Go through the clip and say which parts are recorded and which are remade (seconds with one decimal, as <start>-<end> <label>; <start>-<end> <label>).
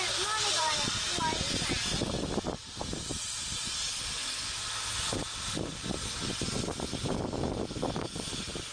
0.0-8.7 recorded